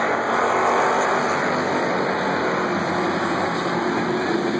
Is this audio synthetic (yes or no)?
no